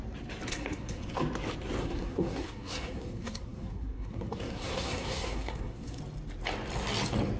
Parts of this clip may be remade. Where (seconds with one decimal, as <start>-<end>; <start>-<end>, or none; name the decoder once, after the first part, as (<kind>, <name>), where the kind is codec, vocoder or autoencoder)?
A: 0.5-1.2 (codec, SNAC); 1.8-6.0